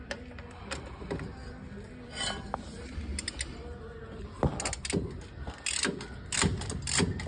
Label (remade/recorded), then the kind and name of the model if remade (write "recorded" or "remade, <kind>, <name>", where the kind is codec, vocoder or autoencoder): recorded